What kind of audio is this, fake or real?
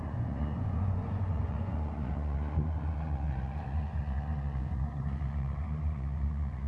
fake